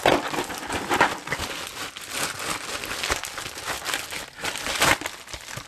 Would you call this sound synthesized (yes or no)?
no